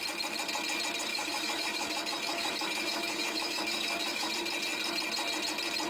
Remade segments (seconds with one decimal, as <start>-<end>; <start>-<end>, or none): 1.1-4.3